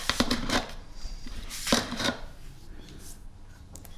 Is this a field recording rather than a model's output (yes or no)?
no